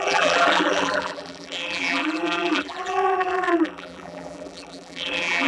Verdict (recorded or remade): remade